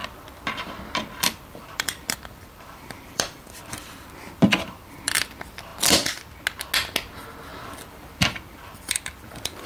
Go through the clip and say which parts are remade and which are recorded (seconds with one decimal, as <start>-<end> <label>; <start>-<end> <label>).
0.0-5.2 remade; 5.2-7.5 recorded; 7.5-9.7 remade